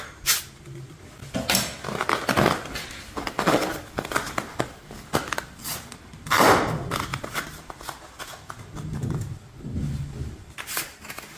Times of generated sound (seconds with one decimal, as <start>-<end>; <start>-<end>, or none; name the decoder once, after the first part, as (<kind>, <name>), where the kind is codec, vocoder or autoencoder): none